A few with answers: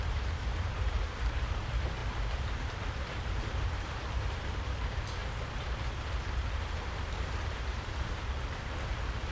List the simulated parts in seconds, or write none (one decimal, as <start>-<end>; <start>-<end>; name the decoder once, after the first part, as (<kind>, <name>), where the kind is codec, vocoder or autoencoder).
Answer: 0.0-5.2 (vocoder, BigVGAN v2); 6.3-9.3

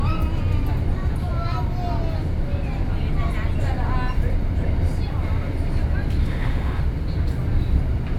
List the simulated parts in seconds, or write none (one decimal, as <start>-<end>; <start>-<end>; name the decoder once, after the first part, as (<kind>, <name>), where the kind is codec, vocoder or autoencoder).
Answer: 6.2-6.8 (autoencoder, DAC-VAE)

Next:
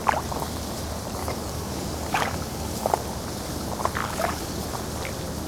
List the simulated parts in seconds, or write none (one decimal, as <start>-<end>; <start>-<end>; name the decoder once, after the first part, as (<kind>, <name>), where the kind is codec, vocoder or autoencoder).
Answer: 1.2-2.9 (codec, DAC); 4.0-4.6

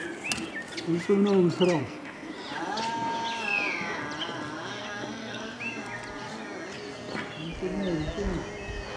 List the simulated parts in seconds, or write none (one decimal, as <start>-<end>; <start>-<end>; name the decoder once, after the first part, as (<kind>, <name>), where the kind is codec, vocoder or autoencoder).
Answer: 1.8-2.3 (codec, SNAC); 4.8-5.6

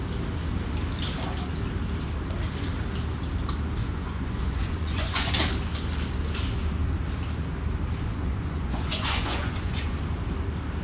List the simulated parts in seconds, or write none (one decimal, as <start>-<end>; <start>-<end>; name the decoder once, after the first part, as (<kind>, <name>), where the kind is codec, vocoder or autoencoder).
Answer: 3.8-5.3 (vocoder, Vocos); 8.1-10.0

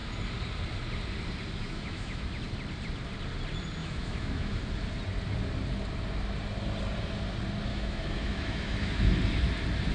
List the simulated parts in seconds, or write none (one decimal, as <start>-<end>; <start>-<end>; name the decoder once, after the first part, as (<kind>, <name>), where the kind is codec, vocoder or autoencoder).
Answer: 1.6-2.3 (autoencoder, DAC-VAE); 3.8-4.6; 7.7-9.1